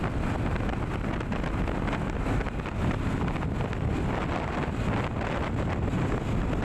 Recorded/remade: recorded